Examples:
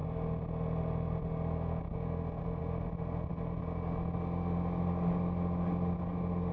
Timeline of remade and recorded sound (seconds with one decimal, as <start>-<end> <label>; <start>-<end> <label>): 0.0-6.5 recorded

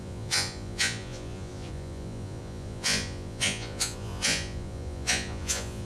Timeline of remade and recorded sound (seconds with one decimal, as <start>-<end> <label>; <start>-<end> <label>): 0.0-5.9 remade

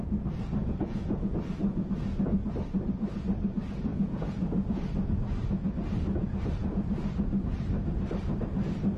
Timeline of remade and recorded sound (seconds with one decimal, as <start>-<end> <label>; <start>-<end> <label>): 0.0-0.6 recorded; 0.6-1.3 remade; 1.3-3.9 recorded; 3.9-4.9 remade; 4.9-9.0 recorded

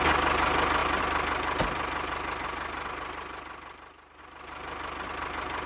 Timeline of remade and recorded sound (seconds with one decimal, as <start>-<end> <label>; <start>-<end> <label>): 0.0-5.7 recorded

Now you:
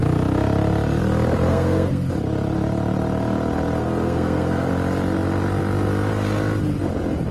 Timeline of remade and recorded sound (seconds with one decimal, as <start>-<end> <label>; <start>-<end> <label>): 0.0-1.5 recorded; 1.5-2.1 remade; 2.1-3.8 recorded; 3.8-4.7 remade; 4.7-7.3 recorded

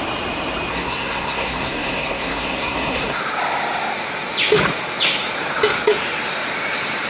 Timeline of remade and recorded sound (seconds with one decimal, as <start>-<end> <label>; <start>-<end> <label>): 0.0-0.7 recorded; 0.7-3.2 remade; 3.2-7.1 recorded